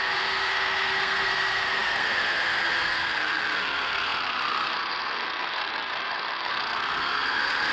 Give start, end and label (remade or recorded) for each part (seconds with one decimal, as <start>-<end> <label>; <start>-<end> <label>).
0.0-7.7 remade